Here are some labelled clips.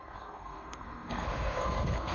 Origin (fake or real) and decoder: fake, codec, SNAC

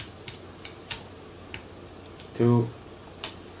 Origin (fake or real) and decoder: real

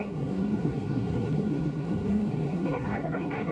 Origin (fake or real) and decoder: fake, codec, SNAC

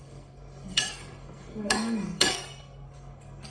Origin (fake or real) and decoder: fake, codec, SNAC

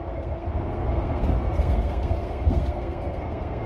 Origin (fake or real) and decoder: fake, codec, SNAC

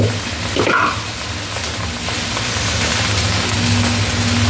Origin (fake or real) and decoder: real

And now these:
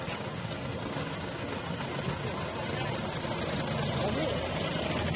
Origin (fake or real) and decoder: real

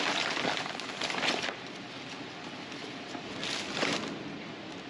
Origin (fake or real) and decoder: real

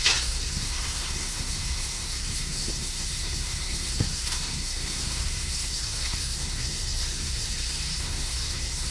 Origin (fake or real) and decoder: fake, codec, SNAC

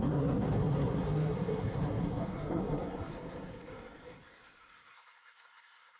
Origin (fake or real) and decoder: fake, codec, SNAC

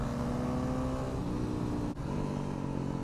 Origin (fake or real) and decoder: real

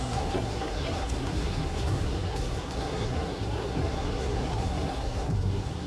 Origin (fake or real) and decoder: fake, codec, SNAC